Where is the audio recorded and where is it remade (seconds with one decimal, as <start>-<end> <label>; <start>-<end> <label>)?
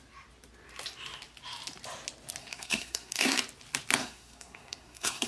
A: 0.0-2.4 recorded; 2.4-3.4 remade; 3.4-4.0 recorded; 4.0-5.3 remade